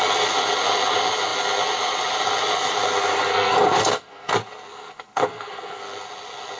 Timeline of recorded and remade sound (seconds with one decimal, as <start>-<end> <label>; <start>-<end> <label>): 0.0-3.3 recorded; 3.3-4.3 remade; 4.3-4.7 recorded; 4.7-5.8 remade; 5.8-6.6 recorded